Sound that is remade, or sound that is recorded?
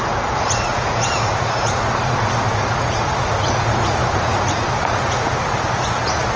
remade